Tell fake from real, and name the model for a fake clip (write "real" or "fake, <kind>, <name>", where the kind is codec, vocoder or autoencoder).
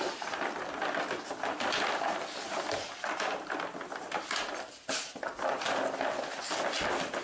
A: real